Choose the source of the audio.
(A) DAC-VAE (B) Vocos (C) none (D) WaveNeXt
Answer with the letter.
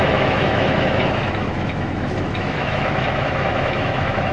A